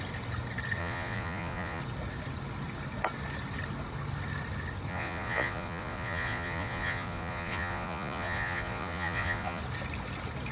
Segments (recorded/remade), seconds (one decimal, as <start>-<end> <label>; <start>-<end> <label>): 0.0-0.8 recorded; 0.8-1.8 remade; 1.8-4.9 recorded; 4.9-9.6 remade; 9.6-10.5 recorded